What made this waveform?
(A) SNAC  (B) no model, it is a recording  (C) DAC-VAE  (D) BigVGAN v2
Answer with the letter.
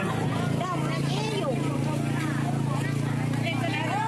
B